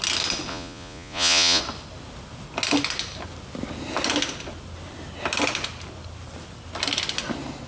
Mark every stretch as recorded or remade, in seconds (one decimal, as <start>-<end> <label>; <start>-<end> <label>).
0.0-0.5 recorded; 0.5-1.6 remade; 1.6-7.7 recorded